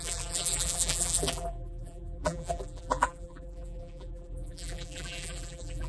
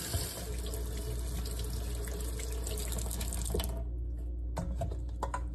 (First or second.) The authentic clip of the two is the second